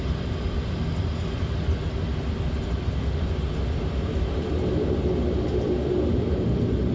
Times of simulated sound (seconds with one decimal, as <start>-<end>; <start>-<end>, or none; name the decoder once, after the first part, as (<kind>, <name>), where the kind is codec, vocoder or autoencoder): none